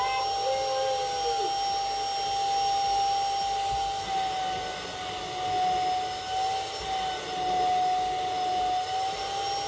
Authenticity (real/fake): real